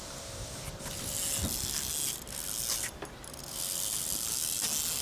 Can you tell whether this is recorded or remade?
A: recorded